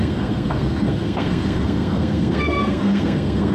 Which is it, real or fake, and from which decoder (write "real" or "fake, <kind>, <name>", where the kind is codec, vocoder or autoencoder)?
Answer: fake, codec, SNAC